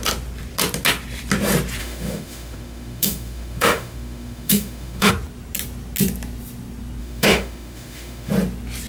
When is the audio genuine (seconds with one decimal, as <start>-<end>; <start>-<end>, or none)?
0.0-1.8; 5.1-7.0; 8.3-8.9